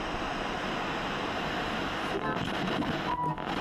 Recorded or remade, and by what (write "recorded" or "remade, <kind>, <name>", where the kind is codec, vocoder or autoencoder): recorded